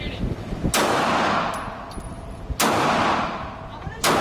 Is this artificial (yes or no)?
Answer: no